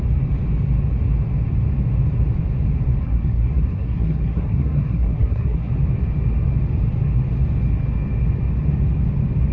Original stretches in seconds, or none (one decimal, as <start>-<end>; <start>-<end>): 0.0-3.0; 5.7-9.5